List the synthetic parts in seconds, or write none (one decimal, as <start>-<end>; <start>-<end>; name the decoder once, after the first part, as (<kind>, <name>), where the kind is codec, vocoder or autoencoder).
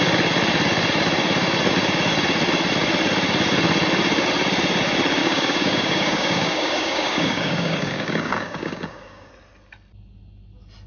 5.2-9.3 (codec, DAC)